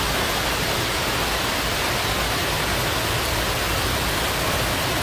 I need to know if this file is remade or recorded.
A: recorded